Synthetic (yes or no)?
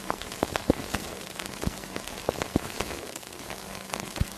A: yes